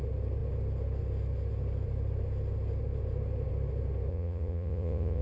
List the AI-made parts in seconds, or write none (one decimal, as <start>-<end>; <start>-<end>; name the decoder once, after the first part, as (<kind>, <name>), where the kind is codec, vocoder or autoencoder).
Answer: 4.1-5.2 (vocoder, Vocos)